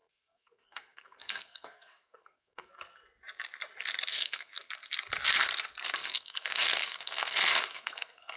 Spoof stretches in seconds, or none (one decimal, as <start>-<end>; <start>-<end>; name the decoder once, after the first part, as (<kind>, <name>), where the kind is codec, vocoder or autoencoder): 0.0-2.7 (codec, SNAC); 4.1-4.7; 6.0-8.4

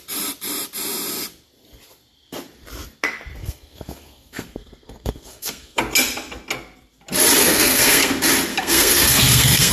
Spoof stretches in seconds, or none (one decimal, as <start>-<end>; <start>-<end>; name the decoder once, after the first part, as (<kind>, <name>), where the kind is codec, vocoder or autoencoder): 3.4-5.8 (codec, SNAC); 7.4-8.1; 8.5-9.7

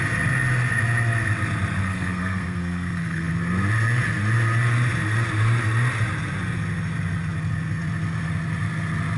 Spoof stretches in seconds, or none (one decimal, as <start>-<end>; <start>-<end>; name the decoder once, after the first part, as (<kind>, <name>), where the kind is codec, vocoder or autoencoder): 1.8-3.3 (codec, SNAC)

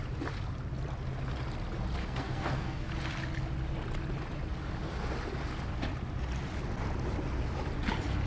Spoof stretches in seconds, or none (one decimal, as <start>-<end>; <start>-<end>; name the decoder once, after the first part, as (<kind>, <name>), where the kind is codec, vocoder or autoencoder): 2.0-2.9 (codec, SNAC)

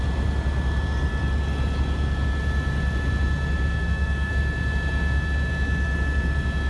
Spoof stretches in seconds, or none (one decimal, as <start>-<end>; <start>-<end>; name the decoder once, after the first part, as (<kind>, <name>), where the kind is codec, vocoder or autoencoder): 3.8-4.3 (codec, SNAC)

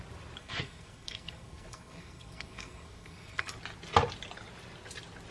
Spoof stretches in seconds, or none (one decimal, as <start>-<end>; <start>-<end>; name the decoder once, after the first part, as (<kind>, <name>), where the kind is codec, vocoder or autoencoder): 0.4-3.5 (codec, SNAC)

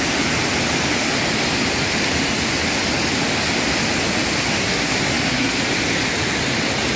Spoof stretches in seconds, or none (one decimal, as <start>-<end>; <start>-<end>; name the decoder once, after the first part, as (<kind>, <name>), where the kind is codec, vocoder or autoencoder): 4.6-5.6 (codec, SNAC)

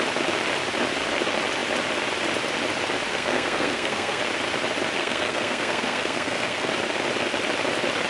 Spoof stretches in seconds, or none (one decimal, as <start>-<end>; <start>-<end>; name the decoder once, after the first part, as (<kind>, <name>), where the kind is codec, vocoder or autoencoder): 3.1-4.2 (codec, SNAC); 5.0-6.7